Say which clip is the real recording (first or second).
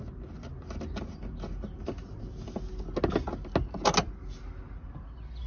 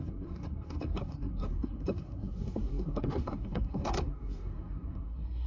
first